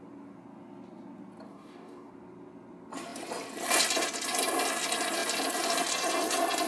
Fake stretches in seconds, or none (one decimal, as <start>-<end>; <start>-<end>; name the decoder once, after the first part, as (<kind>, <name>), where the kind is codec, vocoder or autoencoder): 1.5-2.1 (codec, DAC)